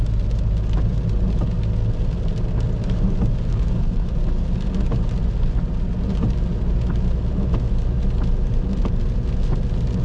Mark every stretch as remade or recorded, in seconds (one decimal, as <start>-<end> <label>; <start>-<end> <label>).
0.0-3.5 recorded; 3.5-4.1 remade; 4.1-10.0 recorded